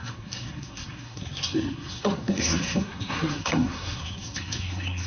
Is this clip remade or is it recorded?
remade